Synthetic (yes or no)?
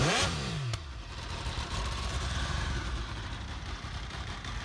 yes